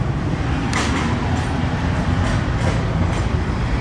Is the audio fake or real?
real